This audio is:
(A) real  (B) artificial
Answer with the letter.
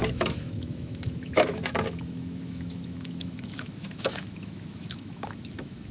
B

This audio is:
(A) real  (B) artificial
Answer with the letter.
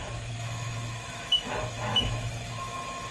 B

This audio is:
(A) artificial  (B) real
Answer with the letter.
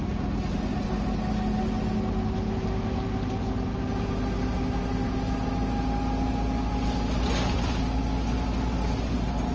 B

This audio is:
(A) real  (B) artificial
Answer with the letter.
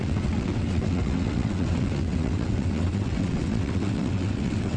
B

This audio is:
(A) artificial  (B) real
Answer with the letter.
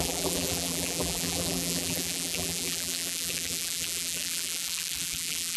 A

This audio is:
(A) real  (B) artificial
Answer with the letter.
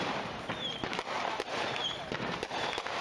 B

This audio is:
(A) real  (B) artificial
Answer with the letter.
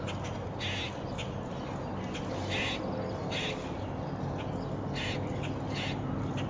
A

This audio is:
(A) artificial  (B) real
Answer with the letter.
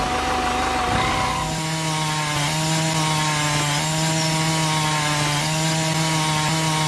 B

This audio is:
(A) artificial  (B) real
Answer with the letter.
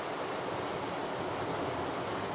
B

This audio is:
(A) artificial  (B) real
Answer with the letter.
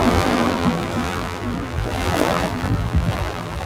A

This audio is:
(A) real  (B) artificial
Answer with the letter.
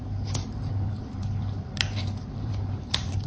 B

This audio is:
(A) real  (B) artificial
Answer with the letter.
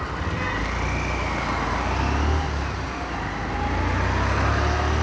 A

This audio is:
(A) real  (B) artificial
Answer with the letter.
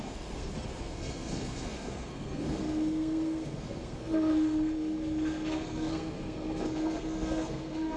B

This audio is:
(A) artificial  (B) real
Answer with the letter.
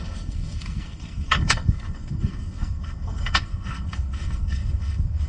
A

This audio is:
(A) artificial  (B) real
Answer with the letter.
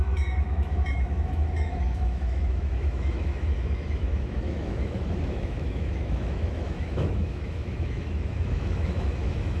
A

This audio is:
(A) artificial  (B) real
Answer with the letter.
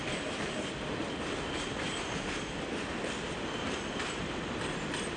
B